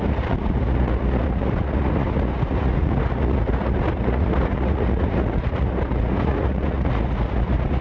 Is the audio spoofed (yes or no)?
yes